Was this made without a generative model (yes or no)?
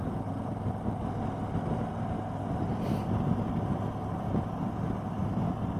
yes